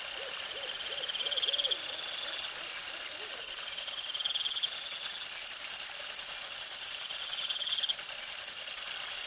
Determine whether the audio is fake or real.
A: real